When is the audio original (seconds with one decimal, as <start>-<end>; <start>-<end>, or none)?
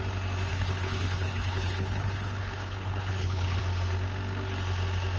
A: 0.0-0.5; 3.6-5.2